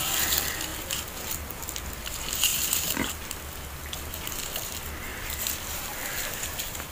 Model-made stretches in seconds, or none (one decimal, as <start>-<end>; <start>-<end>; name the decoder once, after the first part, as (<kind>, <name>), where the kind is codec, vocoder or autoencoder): 0.7-1.6 (vocoder, BigVGAN v2); 2.5-3.1; 5.1-6.9